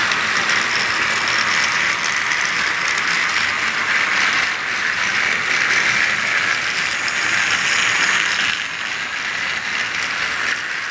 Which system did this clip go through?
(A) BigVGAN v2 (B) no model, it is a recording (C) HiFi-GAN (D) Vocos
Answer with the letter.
B